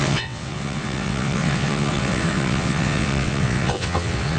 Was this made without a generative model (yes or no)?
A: no